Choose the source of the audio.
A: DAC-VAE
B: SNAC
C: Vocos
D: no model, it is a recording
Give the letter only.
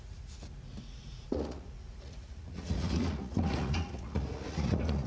C